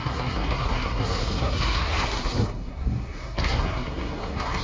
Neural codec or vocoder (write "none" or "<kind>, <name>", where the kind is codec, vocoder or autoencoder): codec, SNAC